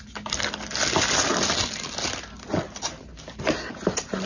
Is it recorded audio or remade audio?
recorded